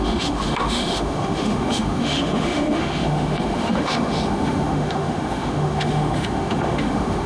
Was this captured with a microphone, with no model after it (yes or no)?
no